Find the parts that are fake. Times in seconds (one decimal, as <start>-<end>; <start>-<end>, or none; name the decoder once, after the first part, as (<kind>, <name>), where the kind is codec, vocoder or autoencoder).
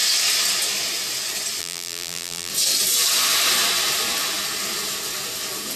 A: 1.6-2.5 (vocoder, BigVGAN v2)